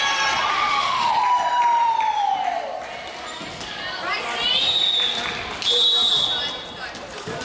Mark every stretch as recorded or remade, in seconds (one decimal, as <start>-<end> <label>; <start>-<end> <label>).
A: 0.0-0.5 recorded; 0.5-1.1 remade; 1.1-7.4 recorded